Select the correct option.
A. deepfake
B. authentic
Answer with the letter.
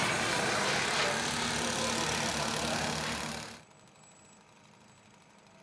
B